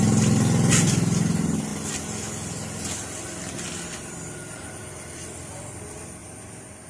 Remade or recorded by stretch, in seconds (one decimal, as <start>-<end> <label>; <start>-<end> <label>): 0.0-6.9 recorded